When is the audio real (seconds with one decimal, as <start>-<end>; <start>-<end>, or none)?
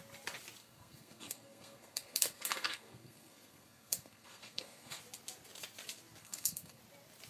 0.0-0.6; 5.0-6.2; 6.8-7.3